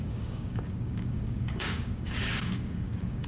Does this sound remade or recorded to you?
remade